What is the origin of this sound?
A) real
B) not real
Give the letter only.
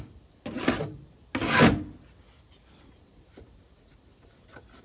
A